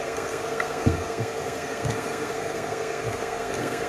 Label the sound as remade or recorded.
remade